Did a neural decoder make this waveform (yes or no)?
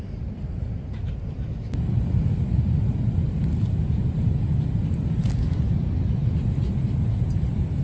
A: no